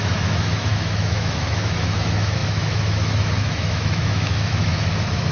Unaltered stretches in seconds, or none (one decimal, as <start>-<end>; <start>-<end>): none